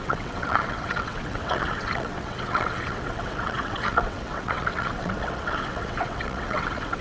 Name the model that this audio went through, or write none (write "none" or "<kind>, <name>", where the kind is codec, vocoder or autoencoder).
vocoder, WaveNeXt